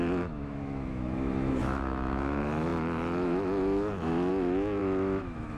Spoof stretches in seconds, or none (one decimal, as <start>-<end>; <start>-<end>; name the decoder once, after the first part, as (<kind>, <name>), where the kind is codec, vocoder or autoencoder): 0.0-5.6 (autoencoder, DAC-VAE)